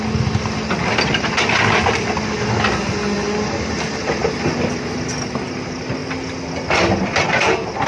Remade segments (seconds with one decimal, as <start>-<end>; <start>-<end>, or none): none